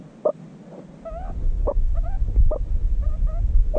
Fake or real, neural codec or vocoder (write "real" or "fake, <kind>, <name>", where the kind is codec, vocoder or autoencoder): real